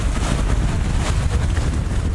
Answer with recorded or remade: recorded